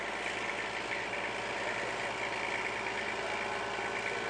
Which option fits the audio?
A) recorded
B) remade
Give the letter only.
A